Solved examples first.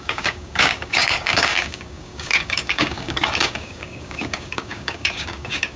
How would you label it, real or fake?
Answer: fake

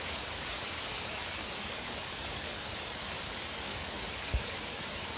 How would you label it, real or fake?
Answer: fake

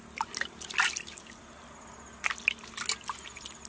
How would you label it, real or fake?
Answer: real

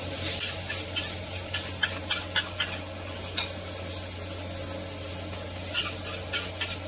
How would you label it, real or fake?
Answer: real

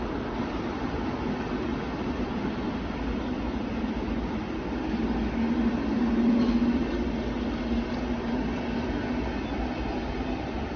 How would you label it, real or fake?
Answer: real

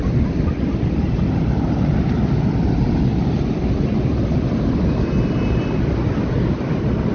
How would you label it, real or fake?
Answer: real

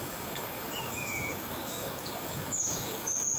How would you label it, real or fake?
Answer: fake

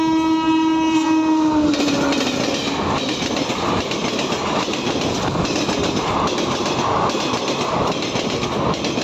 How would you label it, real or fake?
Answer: real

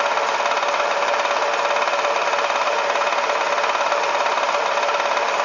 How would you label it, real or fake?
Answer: real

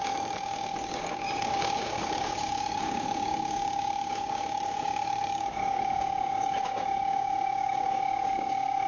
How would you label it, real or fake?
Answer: fake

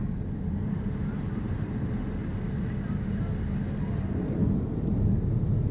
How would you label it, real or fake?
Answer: real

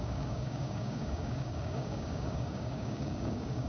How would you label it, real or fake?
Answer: fake